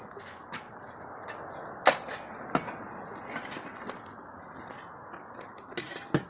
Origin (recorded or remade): recorded